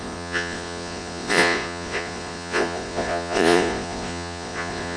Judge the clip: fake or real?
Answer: fake